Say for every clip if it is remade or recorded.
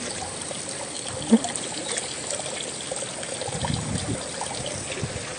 recorded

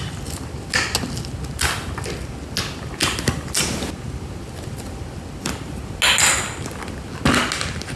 recorded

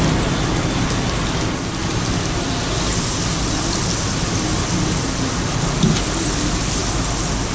recorded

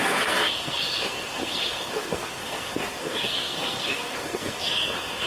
remade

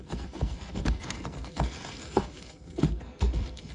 remade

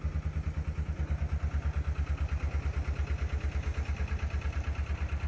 recorded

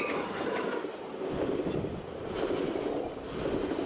recorded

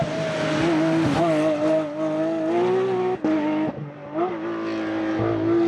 recorded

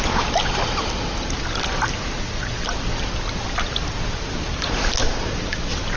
recorded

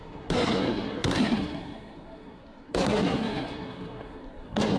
remade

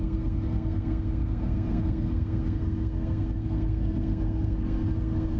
remade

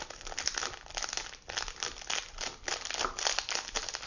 recorded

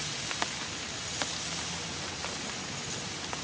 recorded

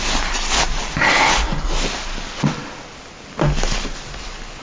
recorded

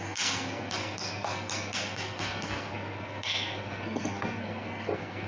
remade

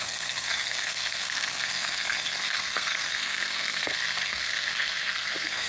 remade